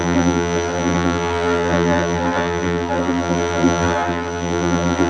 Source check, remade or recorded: remade